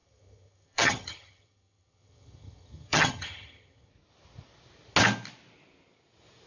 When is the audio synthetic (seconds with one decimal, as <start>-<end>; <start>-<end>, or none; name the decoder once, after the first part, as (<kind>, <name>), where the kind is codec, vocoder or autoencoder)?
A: 0.0-3.9 (vocoder, HiFi-GAN)